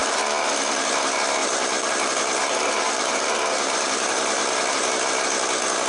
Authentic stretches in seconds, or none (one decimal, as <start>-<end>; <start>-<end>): 0.5-1.4; 4.9-5.9